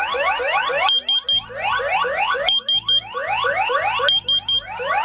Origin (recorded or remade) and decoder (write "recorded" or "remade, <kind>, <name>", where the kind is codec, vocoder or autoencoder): recorded